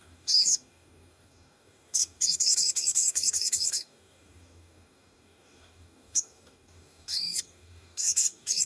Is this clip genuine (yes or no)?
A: no